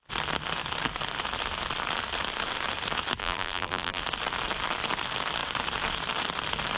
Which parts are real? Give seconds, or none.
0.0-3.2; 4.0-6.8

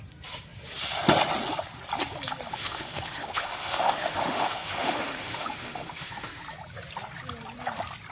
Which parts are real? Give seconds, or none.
0.0-2.5; 6.4-8.1

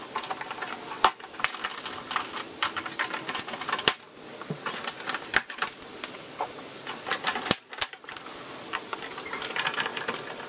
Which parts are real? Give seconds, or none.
0.0-10.5